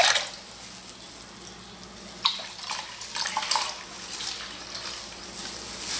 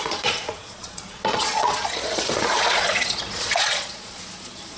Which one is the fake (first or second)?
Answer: second